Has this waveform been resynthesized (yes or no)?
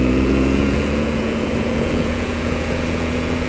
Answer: yes